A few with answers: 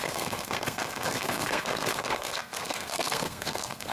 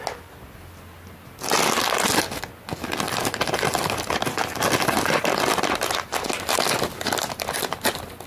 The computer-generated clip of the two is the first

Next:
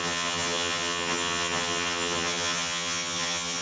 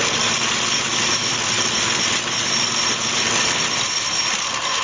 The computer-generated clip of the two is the first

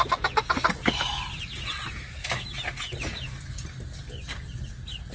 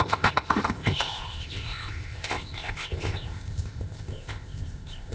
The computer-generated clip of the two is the second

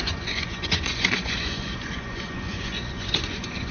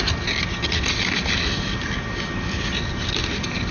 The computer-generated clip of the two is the first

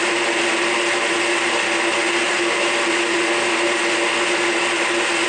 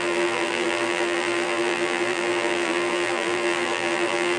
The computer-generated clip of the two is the second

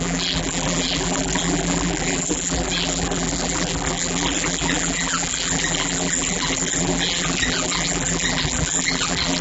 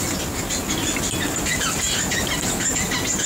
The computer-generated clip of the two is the first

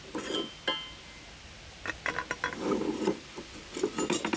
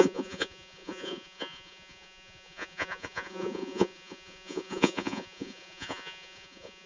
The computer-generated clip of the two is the second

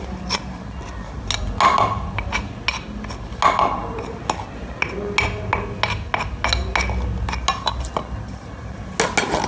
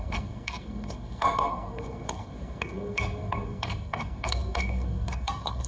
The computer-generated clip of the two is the second